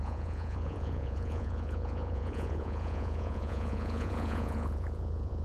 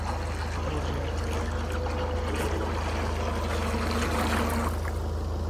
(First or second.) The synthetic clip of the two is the first